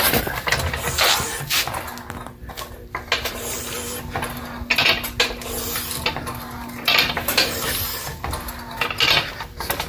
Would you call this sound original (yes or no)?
yes